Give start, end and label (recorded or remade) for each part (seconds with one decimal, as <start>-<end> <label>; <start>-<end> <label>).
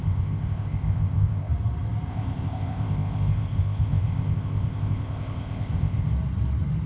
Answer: 0.0-1.5 remade; 1.5-2.1 recorded; 2.1-6.1 remade; 6.1-6.9 recorded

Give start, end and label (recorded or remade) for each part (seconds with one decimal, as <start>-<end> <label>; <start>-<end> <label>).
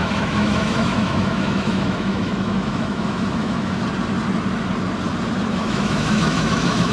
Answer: 0.0-3.8 remade; 3.8-5.5 recorded; 5.5-6.9 remade